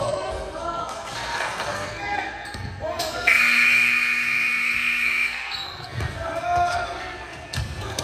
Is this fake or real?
fake